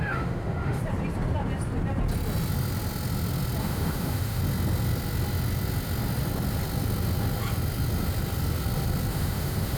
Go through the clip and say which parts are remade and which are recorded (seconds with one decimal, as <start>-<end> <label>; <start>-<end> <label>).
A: 0.0-0.8 remade; 0.8-3.6 recorded; 3.6-4.4 remade; 4.4-9.1 recorded; 9.1-9.8 remade